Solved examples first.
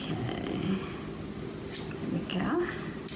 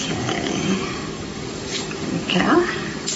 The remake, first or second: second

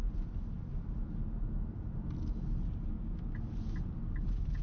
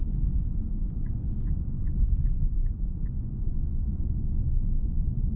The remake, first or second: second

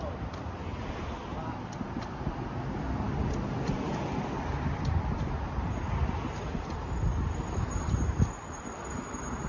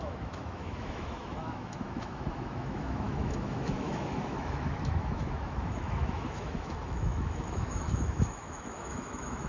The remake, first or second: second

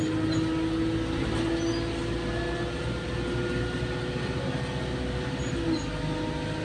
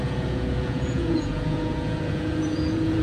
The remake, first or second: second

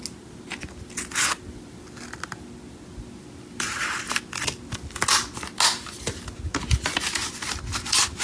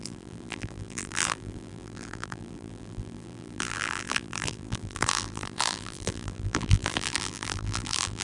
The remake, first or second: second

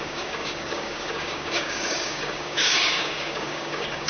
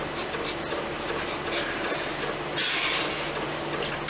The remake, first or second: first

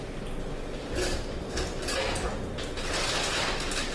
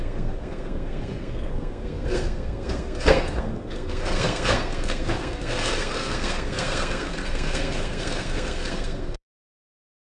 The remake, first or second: second